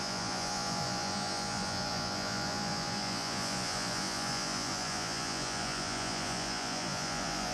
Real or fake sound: fake